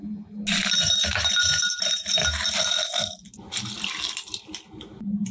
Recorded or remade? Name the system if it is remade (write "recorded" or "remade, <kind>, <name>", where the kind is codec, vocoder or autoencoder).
recorded